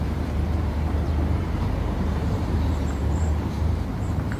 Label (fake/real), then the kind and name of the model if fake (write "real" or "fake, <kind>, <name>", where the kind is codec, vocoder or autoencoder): fake, vocoder, BigVGAN v2